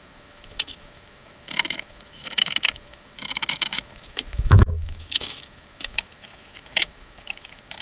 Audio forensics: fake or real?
fake